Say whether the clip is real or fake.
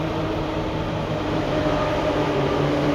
fake